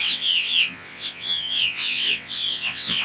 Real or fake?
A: fake